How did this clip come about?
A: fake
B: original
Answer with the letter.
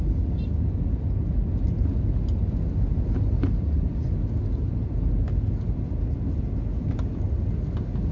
B